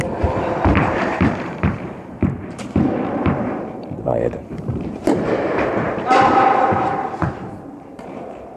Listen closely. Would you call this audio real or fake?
fake